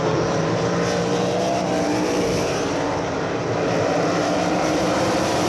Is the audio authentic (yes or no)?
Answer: no